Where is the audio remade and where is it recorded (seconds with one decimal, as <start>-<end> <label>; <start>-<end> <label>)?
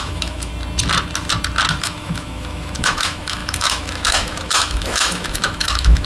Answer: 0.0-0.5 remade; 0.5-1.8 recorded; 1.8-6.1 remade